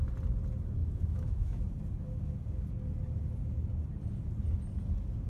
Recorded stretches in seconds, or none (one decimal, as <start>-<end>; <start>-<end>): 0.0-0.8; 1.6-5.3